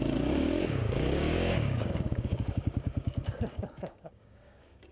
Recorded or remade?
remade